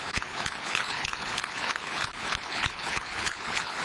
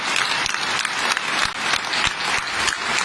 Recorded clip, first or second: second